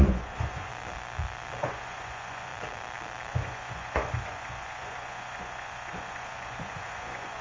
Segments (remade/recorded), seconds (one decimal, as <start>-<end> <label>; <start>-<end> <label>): 0.0-0.7 remade; 0.7-1.6 recorded; 1.6-2.5 remade; 2.5-3.3 recorded; 3.3-7.4 remade